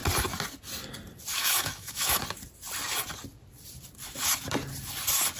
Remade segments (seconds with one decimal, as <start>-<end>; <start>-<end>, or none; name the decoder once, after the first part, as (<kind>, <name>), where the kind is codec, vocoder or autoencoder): 1.4-2.2 (autoencoder, DAC-VAE)